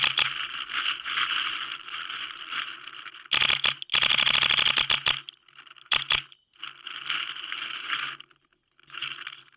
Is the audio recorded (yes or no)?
yes